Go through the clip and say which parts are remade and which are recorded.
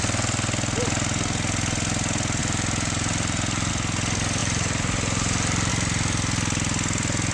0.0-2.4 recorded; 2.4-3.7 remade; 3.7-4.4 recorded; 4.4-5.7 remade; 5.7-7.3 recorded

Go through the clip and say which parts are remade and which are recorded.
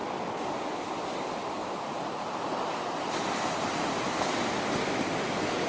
0.0-0.8 recorded; 0.8-1.6 remade; 1.6-2.4 recorded; 2.4-5.7 remade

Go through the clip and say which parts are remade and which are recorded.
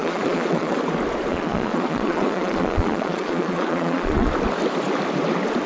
0.0-0.8 remade; 0.8-1.3 recorded; 1.3-4.3 remade; 4.3-5.7 recorded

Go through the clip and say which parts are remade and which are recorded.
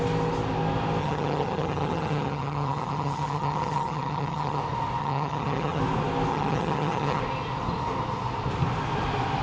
0.0-1.0 recorded; 1.0-4.6 remade; 4.6-5.0 recorded; 5.0-5.8 remade; 5.8-6.3 recorded; 6.3-7.2 remade; 7.2-9.4 recorded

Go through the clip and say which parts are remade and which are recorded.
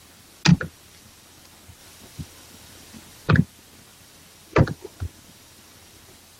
0.0-0.5 recorded; 0.5-1.4 remade; 1.4-1.8 recorded; 1.8-3.3 remade; 3.3-3.9 recorded; 3.9-6.0 remade; 6.0-6.4 recorded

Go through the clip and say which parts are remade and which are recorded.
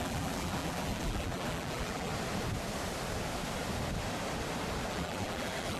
0.0-2.1 remade; 2.1-4.9 recorded; 4.9-5.8 remade